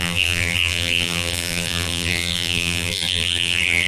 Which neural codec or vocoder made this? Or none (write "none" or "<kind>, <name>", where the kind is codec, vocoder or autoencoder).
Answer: vocoder, BigVGAN v2